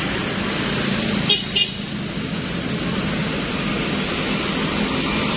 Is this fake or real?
real